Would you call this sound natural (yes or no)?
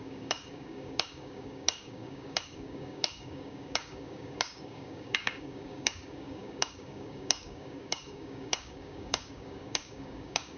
no